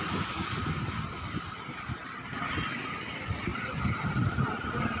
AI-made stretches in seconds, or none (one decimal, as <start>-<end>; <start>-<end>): 0.0-3.5; 4.0-5.0